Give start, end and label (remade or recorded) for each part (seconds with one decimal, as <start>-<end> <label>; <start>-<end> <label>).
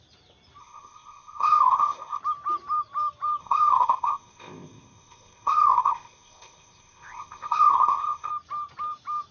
0.0-0.6 recorded; 0.6-2.2 remade; 2.2-3.4 recorded; 3.4-8.3 remade; 8.3-9.3 recorded